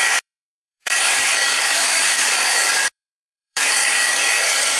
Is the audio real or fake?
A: fake